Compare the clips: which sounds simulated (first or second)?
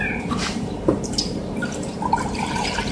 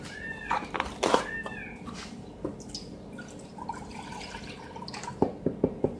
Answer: first